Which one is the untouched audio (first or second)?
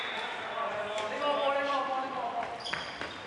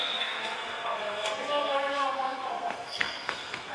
first